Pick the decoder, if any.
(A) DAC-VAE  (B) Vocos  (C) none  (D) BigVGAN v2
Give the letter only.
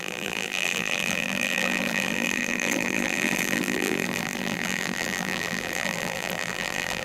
D